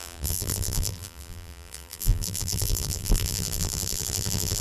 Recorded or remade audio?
remade